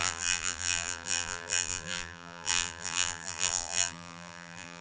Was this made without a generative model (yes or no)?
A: no